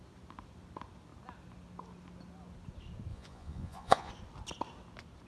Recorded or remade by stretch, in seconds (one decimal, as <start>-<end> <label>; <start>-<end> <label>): 0.0-3.1 recorded; 3.1-4.1 remade; 4.1-5.3 recorded